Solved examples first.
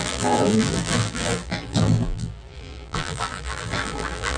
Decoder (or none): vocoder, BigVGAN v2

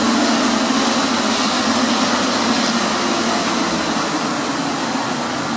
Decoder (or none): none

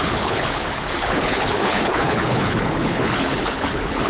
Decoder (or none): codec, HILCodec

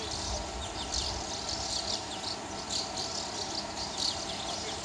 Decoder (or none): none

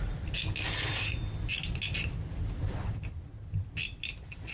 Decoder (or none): none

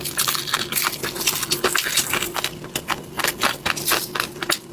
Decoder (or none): none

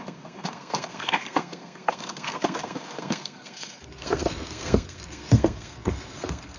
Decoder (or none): codec, SNAC